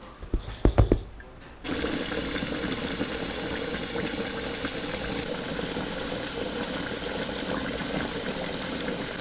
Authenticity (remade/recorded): recorded